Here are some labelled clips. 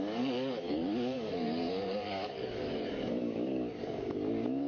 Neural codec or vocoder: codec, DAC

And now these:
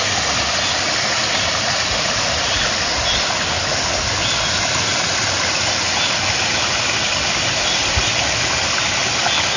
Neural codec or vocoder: none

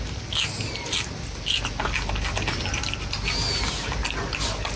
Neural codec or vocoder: none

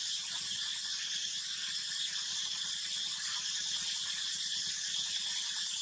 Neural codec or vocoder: vocoder, BigVGAN v2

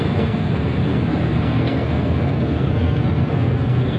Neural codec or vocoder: codec, SNAC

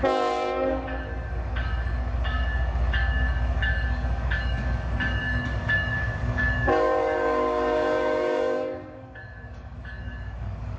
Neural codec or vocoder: codec, DAC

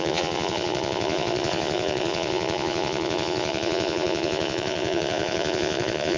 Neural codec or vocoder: vocoder, Vocos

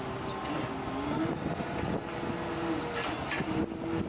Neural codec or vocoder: none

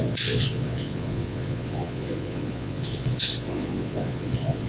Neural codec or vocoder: vocoder, Vocos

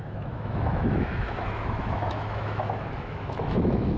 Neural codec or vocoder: autoencoder, DAC-VAE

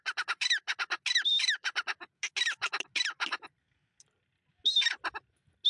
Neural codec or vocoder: none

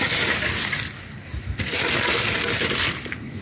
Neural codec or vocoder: none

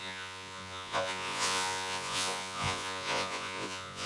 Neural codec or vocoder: vocoder, Vocos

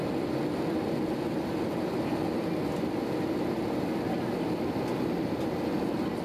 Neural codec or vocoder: none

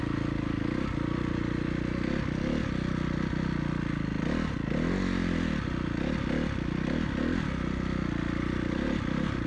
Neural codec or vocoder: none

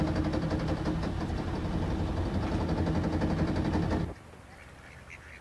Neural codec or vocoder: none